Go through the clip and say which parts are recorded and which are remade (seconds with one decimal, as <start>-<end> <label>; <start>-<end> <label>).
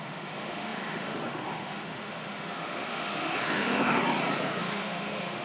0.0-4.0 remade; 4.0-4.6 recorded; 4.6-5.4 remade